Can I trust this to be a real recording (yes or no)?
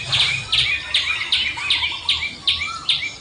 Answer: yes